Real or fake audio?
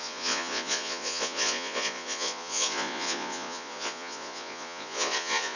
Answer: fake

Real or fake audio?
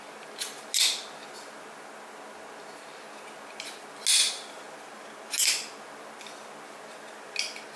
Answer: real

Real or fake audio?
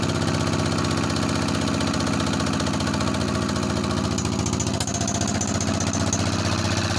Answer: real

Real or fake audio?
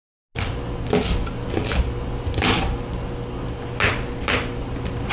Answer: real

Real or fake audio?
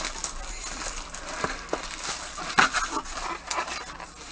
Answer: real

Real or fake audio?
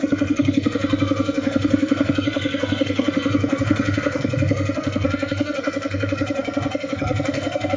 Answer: fake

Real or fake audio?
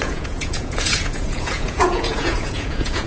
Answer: fake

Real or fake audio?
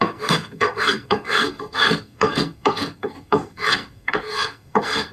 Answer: fake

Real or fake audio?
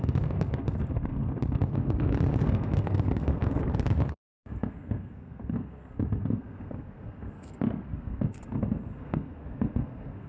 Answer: fake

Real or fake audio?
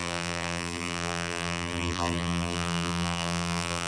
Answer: fake